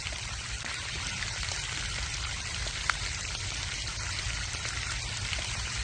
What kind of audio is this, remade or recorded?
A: recorded